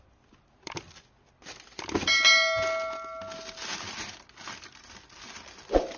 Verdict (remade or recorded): recorded